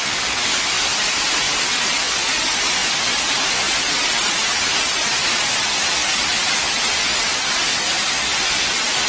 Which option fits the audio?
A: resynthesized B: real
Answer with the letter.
B